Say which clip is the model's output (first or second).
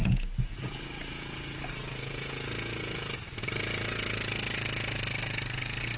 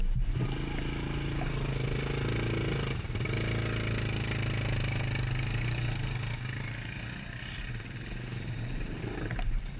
first